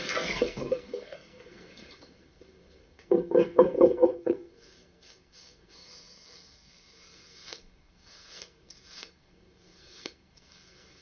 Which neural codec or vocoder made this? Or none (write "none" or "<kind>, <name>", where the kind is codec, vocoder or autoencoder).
codec, SNAC